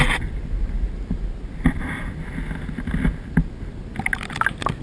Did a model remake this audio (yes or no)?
no